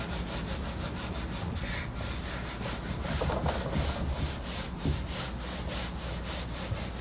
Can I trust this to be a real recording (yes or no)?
yes